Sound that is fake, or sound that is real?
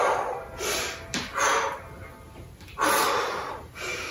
real